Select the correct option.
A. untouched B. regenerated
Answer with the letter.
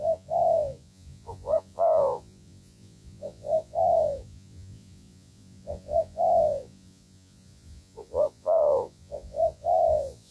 B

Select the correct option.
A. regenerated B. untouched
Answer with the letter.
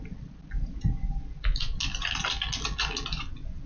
B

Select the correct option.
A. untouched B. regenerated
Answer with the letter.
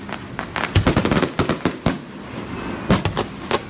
A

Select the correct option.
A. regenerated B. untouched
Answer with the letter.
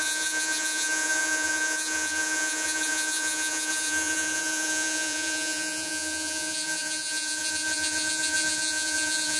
A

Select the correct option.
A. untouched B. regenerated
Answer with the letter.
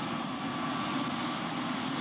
A